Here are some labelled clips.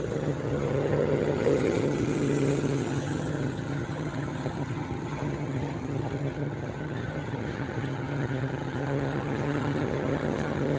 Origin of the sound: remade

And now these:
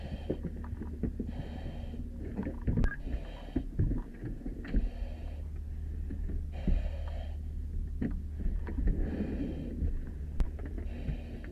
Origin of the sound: recorded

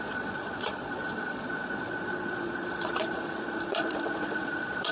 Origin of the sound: remade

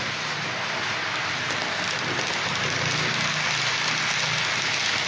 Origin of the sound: recorded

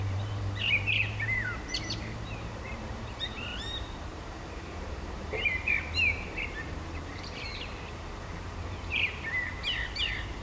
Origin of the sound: remade